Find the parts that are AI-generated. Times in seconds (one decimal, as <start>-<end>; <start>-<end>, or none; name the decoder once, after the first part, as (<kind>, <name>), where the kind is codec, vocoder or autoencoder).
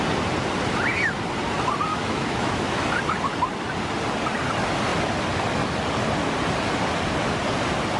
1.9-2.8 (autoencoder, DAC-VAE)